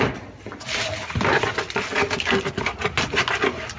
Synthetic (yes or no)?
no